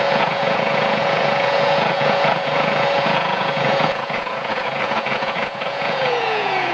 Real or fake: fake